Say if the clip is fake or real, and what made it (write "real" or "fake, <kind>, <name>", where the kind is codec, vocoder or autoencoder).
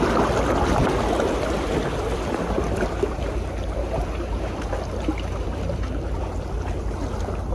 real